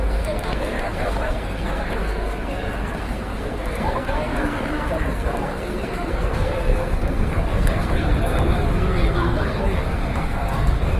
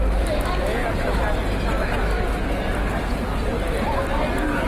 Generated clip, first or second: first